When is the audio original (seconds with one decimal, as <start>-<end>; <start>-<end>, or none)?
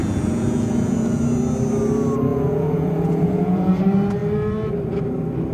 1.2-2.3; 3.8-5.5